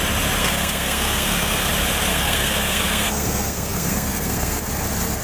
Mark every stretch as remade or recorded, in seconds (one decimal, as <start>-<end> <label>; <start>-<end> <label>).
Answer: 0.0-0.4 recorded; 0.4-1.7 remade; 1.7-2.1 recorded; 2.1-4.6 remade; 4.6-5.2 recorded